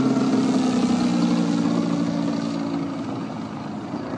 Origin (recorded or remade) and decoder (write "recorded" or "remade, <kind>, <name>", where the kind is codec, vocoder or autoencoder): recorded